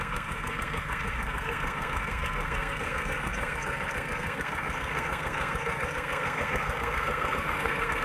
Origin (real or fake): fake